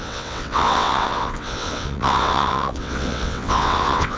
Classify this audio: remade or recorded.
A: remade